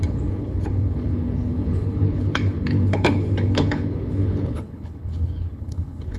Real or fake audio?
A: fake